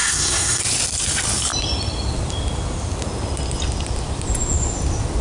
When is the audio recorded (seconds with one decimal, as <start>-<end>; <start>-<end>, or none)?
0.6-5.2